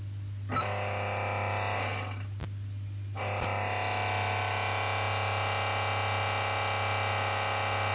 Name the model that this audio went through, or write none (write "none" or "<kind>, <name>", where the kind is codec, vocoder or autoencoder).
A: none